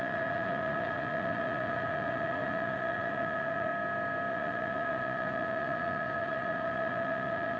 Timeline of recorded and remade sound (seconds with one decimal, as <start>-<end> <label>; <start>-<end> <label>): 0.0-3.7 remade; 3.7-4.3 recorded; 4.3-7.6 remade